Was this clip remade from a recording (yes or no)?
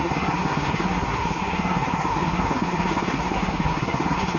yes